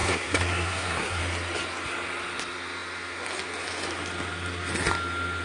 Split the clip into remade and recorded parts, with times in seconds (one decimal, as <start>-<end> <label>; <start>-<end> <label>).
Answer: 0.0-1.2 remade; 1.2-5.4 recorded